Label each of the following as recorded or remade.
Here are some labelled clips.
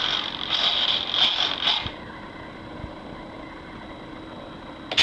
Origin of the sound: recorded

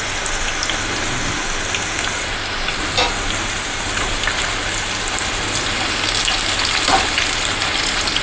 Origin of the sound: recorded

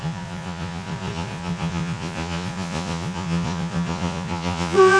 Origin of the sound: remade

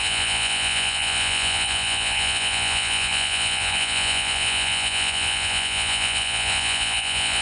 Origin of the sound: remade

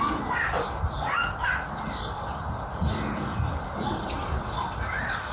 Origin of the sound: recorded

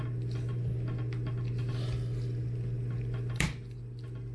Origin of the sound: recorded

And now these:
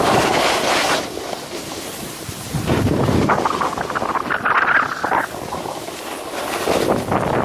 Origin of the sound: remade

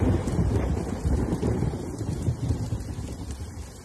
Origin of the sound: remade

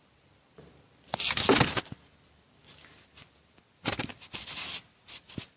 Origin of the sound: recorded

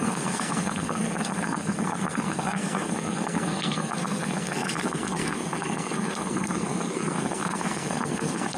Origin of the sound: remade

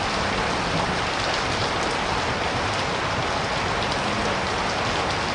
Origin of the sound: recorded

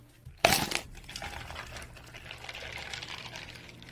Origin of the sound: recorded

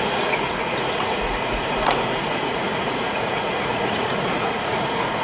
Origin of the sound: remade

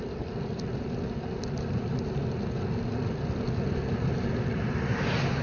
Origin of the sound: recorded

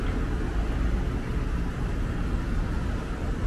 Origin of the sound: recorded